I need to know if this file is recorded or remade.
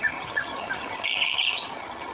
remade